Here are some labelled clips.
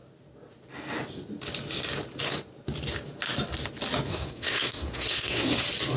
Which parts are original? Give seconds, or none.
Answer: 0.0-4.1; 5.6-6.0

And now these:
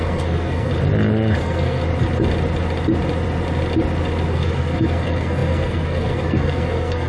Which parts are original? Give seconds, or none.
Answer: 0.7-1.4; 1.8-4.3

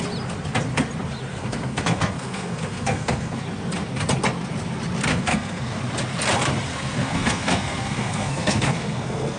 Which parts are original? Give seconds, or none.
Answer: 0.0-1.3; 3.4-5.1; 5.8-6.7

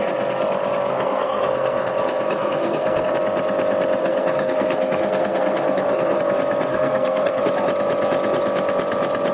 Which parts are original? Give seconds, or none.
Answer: 0.0-0.9; 3.1-4.0; 6.2-6.7; 7.4-9.3

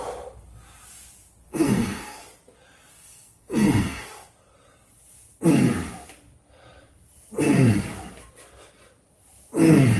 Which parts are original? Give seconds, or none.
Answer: 0.0-1.5; 2.2-2.9; 4.0-10.0

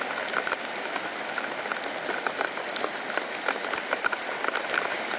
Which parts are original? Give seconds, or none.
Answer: 0.0-5.2

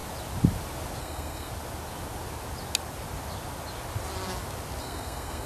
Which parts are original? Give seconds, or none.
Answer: 0.0-1.0; 1.5-4.8